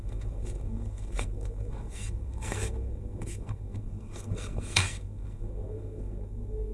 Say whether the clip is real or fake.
fake